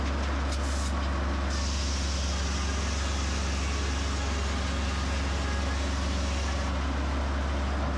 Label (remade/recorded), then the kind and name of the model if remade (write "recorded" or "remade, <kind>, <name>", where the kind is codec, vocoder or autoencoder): recorded